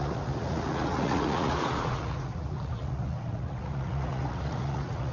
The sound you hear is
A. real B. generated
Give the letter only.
B